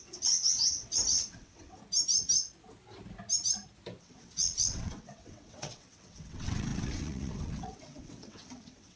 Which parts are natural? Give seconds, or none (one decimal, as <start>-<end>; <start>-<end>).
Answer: 1.8-4.0